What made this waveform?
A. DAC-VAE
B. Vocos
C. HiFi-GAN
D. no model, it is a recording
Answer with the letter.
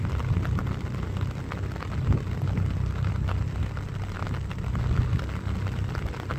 D